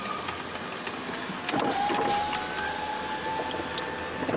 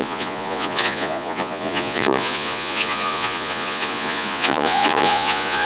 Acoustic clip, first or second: first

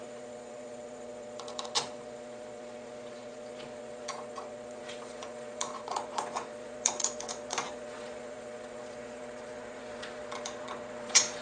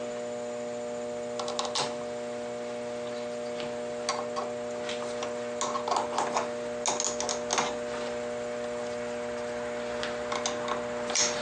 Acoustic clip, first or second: second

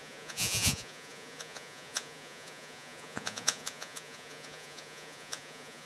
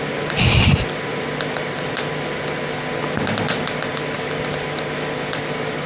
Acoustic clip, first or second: second